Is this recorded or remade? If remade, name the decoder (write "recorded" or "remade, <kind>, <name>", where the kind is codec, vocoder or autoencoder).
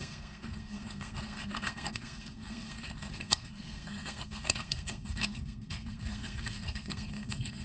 remade, codec, SNAC